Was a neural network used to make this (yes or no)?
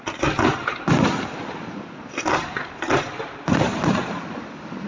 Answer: yes